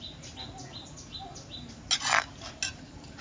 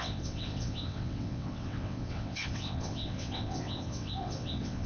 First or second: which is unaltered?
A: first